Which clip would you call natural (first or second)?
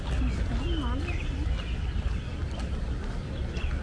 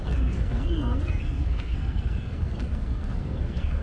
first